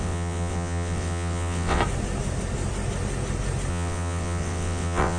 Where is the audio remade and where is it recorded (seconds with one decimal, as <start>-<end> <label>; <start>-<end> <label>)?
0.0-1.8 remade; 1.8-3.7 recorded; 3.7-5.2 remade